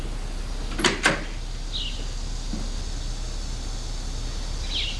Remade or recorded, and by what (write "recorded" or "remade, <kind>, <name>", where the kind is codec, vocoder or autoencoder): recorded